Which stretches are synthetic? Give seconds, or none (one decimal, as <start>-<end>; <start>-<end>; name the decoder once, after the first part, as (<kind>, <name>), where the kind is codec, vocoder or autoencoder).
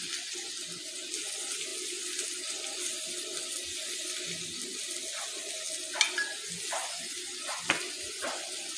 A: none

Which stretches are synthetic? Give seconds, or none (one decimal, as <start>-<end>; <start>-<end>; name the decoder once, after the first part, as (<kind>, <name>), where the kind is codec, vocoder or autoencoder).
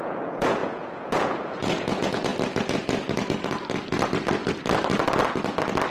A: 0.0-2.3 (vocoder, Vocos)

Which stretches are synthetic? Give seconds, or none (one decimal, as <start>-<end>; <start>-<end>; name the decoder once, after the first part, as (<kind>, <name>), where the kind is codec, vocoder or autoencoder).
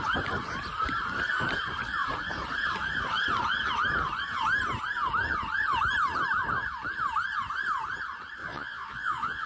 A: 8.4-9.5 (vocoder, Vocos)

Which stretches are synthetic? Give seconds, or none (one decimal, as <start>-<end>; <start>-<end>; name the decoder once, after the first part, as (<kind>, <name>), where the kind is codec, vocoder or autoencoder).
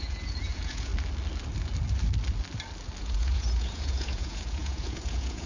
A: 0.0-0.9 (vocoder, Vocos); 3.0-5.5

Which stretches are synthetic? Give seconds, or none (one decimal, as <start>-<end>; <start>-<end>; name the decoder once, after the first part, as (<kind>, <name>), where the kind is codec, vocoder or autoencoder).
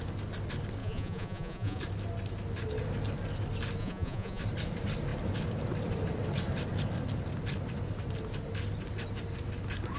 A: 0.8-1.8 (vocoder, Vocos); 3.8-4.4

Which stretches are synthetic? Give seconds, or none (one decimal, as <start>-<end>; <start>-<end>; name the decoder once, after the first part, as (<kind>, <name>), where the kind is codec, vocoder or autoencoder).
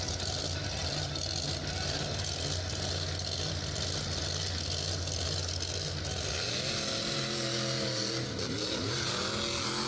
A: none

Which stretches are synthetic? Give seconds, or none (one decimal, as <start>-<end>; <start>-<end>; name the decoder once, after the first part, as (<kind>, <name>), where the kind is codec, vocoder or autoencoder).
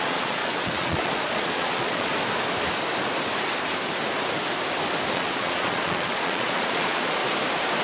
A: 0.0-2.1 (vocoder, Vocos); 5.1-7.2